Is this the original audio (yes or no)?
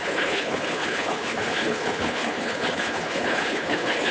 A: no